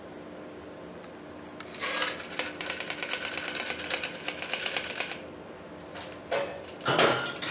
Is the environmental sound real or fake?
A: real